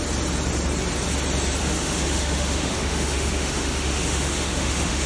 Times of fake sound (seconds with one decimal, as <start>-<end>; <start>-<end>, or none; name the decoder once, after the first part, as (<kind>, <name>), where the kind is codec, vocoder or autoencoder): 1.6-5.1 (autoencoder, DAC-VAE)